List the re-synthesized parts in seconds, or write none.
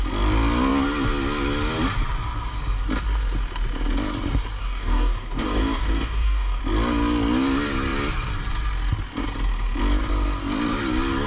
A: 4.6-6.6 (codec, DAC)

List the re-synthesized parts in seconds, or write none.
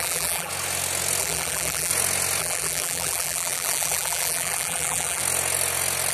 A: 0.0-0.5 (vocoder, BigVGAN v2); 1.2-1.9; 2.4-5.2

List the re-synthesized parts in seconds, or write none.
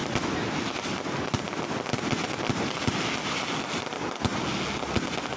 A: none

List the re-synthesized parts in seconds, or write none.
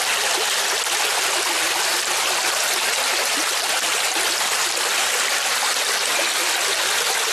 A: 1.9-2.6 (vocoder, BigVGAN v2)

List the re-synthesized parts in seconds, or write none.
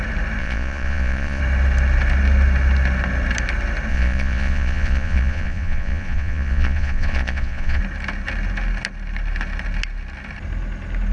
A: 0.4-1.4 (vocoder, Vocos); 3.9-7.8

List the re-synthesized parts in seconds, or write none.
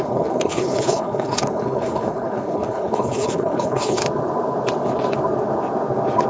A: 0.0-4.0 (codec, HILCodec)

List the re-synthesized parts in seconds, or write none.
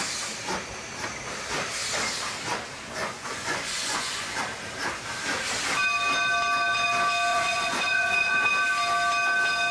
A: 3.0-4.4 (vocoder, Vocos); 7.3-8.5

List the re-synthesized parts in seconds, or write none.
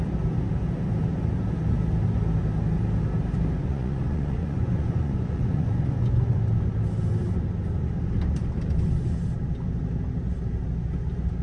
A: 3.6-6.4 (vocoder, Vocos)